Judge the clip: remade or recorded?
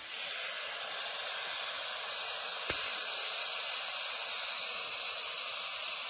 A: recorded